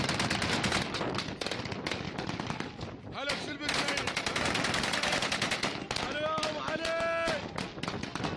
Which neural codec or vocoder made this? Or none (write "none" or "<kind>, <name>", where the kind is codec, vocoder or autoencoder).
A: none